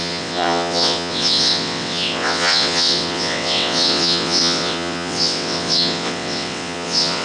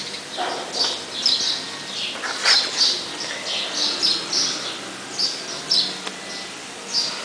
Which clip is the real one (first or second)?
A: second